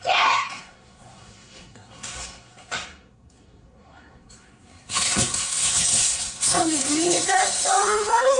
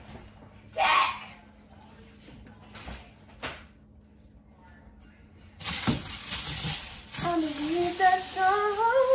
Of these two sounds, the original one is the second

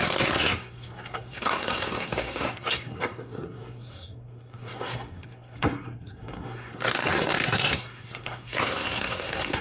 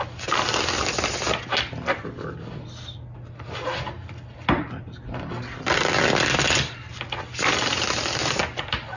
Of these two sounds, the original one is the second